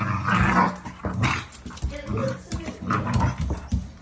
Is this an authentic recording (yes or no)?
yes